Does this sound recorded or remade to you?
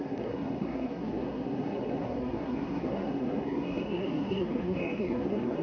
remade